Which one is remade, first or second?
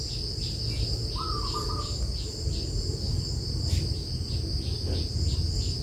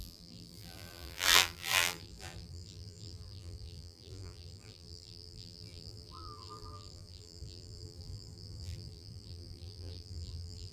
second